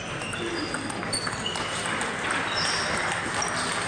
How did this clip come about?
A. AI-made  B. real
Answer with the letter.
B